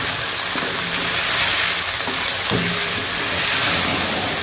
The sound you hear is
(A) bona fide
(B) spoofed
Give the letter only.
A